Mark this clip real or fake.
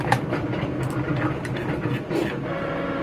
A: real